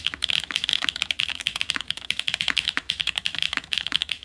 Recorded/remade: remade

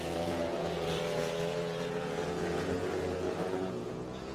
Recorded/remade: remade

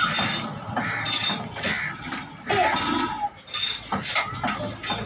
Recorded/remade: recorded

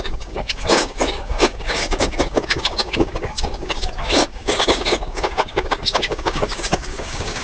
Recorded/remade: remade